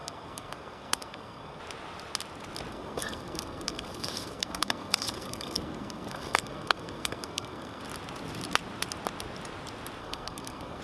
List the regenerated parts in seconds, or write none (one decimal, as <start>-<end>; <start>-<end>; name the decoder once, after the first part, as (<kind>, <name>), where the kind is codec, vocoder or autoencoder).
0.0-1.6 (codec, SNAC); 2.7-7.8; 10.0-10.8